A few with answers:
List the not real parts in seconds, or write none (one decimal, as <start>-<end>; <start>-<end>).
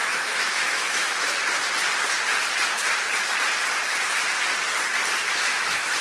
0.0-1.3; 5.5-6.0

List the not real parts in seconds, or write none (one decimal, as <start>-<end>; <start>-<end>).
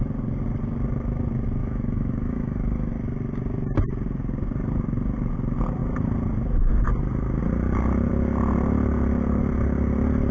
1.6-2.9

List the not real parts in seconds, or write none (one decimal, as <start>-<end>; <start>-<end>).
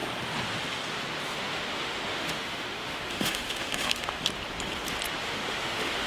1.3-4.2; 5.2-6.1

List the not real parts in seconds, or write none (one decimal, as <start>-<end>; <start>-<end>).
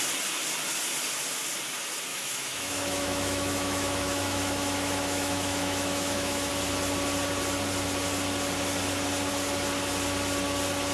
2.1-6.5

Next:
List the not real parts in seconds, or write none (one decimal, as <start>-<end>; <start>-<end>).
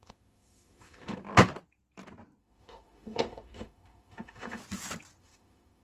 0.0-1.2; 2.4-4.6; 5.2-5.8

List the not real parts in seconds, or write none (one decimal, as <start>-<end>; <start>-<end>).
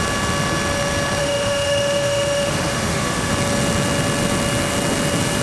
1.2-3.3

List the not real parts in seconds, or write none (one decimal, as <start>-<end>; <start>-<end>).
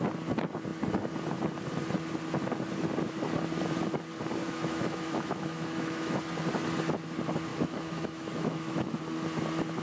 4.4-6.2; 7.5-9.0